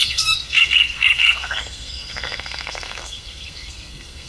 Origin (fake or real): fake